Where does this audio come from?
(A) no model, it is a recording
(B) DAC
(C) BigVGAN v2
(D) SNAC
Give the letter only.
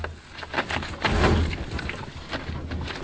A